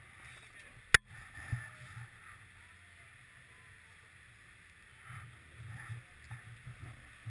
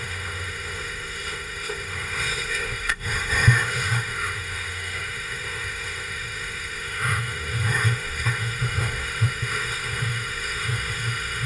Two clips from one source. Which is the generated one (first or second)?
second